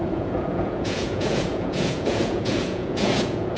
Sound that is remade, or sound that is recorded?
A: remade